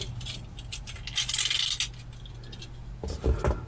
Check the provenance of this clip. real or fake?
real